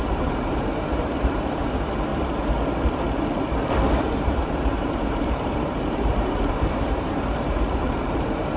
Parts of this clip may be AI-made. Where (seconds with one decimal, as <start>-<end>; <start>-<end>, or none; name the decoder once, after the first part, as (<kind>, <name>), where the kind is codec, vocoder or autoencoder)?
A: 0.0-2.1 (vocoder, BigVGAN v2); 4.2-8.6